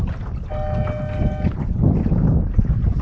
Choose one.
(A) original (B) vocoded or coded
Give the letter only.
A